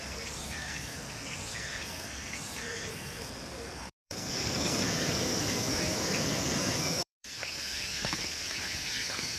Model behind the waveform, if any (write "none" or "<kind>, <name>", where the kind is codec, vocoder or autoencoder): codec, SNAC